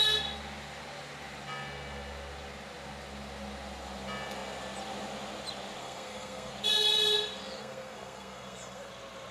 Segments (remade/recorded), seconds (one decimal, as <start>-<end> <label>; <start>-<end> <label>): 0.0-5.8 recorded; 5.8-6.5 remade; 6.5-7.6 recorded; 7.6-8.9 remade; 8.9-9.3 recorded